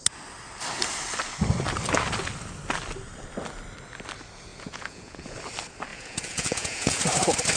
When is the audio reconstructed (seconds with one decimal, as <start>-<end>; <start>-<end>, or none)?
4.5-5.4; 5.9-7.0